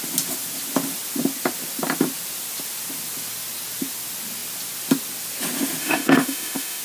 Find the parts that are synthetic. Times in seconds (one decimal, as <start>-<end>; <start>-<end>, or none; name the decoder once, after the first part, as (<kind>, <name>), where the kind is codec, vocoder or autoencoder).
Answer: 5.8-6.8 (autoencoder, DAC-VAE)